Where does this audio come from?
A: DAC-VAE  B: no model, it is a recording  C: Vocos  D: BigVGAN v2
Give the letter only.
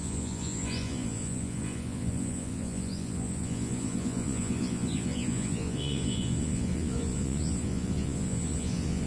C